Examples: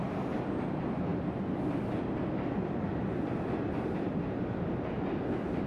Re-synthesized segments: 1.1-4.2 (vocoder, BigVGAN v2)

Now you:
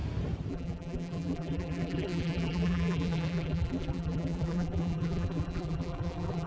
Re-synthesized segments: 0.5-6.5 (vocoder, BigVGAN v2)

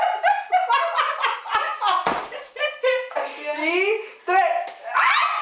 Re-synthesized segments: none

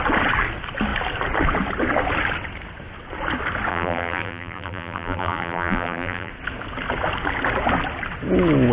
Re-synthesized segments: 3.7-6.3 (vocoder, BigVGAN v2)